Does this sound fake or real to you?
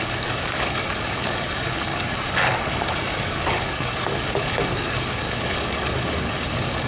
fake